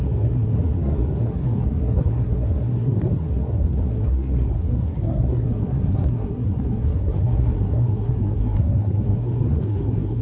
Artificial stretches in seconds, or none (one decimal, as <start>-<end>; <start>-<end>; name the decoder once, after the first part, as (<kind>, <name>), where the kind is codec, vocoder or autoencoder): 0.0-10.2 (codec, SNAC)